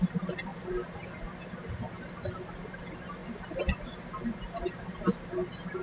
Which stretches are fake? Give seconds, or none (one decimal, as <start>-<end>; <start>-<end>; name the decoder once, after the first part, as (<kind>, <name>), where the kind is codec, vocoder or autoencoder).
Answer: none